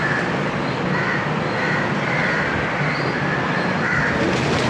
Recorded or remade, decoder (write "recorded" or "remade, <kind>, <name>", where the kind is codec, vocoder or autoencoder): recorded